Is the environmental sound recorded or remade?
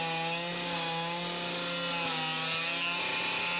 recorded